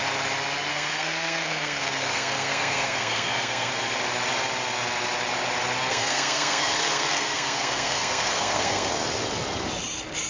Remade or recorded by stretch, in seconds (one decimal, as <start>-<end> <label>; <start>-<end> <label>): 0.0-0.7 recorded; 0.7-3.7 remade; 3.7-5.9 recorded; 5.9-8.9 remade; 8.9-10.3 recorded